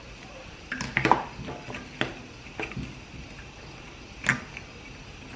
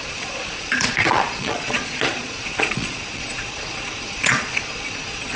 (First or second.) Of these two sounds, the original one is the first